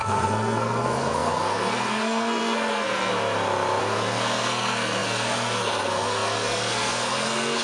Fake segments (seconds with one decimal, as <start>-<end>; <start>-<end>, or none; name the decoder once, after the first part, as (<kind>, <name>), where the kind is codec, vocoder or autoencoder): 0.0-3.1 (codec, SNAC); 3.8-7.6